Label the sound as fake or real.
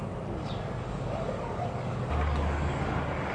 fake